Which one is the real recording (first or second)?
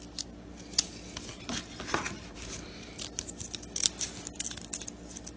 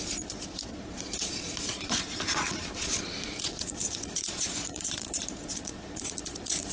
first